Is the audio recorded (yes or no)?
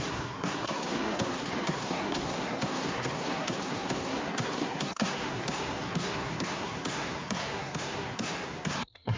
no